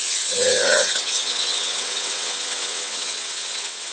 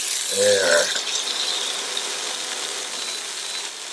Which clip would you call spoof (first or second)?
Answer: first